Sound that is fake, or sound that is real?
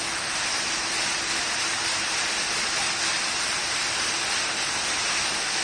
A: real